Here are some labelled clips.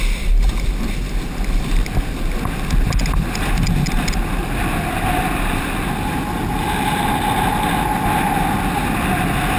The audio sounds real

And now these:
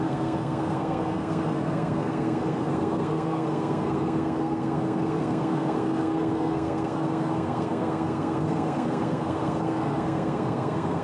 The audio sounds fake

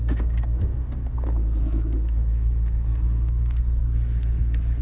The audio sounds fake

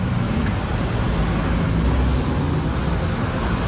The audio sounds real